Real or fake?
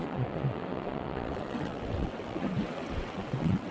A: fake